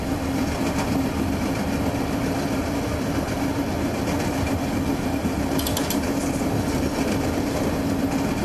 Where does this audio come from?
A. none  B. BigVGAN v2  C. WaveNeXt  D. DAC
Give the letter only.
A